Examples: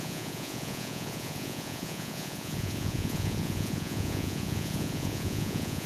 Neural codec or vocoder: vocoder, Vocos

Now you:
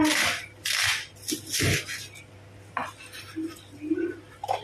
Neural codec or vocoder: none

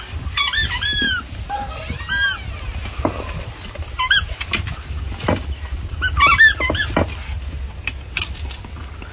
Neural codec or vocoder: none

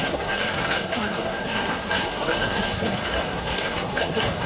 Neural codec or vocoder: codec, SNAC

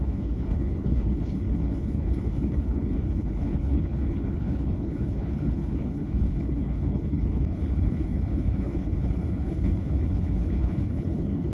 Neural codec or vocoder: codec, HILCodec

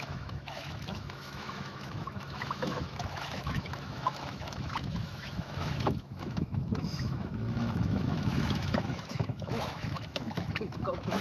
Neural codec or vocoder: autoencoder, DAC-VAE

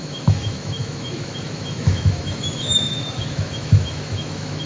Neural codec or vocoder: autoencoder, DAC-VAE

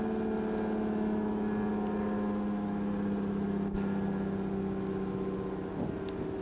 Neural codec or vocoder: none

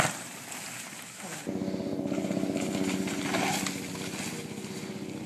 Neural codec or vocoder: none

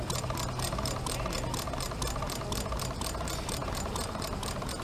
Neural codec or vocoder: none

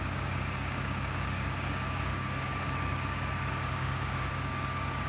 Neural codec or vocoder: codec, DAC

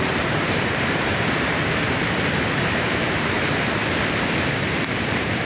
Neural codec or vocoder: vocoder, BigVGAN v2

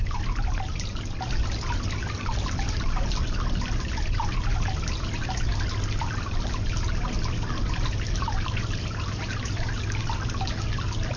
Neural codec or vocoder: none